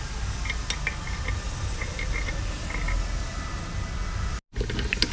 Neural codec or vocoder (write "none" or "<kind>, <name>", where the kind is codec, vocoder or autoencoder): none